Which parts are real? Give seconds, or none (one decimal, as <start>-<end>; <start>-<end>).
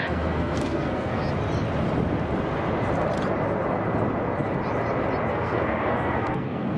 1.2-5.3